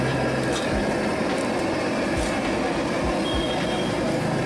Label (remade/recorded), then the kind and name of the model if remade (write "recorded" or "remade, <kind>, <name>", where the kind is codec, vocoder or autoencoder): recorded